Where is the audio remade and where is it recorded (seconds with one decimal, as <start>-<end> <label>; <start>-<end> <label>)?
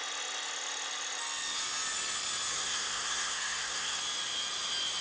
0.0-2.5 recorded; 2.5-4.0 remade; 4.0-5.0 recorded